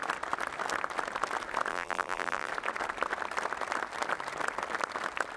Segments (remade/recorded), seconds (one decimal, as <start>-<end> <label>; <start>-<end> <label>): 0.0-1.7 recorded; 1.7-2.5 remade; 2.5-5.4 recorded